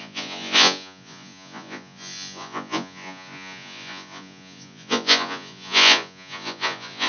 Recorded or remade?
remade